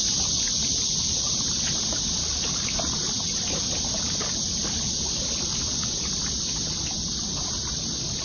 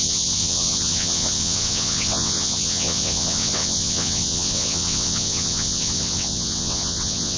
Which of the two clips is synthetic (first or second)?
second